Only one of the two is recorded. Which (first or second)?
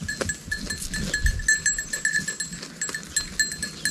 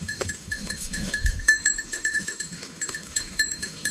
first